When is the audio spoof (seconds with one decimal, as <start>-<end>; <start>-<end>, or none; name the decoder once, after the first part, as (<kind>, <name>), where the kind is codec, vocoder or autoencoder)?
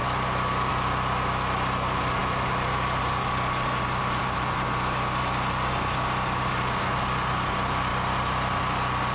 none